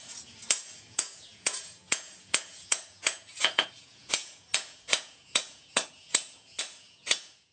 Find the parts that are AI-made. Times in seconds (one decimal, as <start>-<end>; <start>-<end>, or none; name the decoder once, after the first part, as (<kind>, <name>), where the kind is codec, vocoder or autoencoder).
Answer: 0.0-7.5 (vocoder, Vocos)